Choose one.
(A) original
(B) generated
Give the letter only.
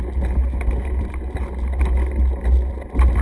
A